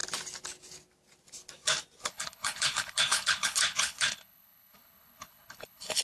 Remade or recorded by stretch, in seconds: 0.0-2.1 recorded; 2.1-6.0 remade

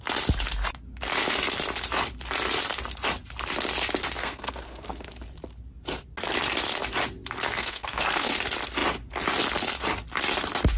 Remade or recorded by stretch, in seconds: 0.0-4.2 recorded; 4.2-5.0 remade; 5.0-7.6 recorded; 7.6-8.3 remade; 8.3-10.8 recorded

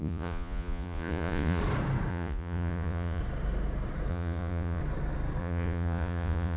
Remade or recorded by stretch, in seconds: 0.0-1.6 remade; 1.6-2.1 recorded; 2.1-3.2 remade; 3.2-4.1 recorded; 4.1-4.8 remade; 4.8-5.4 recorded; 5.4-6.6 remade

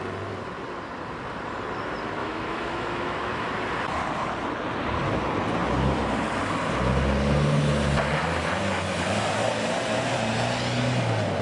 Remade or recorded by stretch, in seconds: 0.0-2.2 recorded; 2.2-3.5 remade; 3.5-11.4 recorded

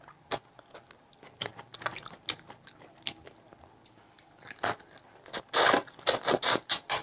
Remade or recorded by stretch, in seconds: 0.0-7.0 recorded